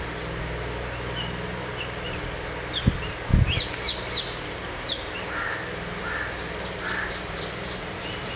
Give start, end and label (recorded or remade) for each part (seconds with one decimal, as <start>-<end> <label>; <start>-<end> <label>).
0.0-8.4 recorded